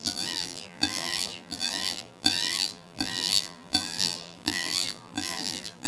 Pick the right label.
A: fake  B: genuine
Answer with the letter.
A